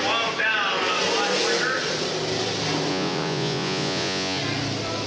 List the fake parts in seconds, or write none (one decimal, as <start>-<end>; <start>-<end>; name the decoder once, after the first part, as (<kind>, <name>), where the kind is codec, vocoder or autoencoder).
2.9-4.4 (vocoder, Vocos)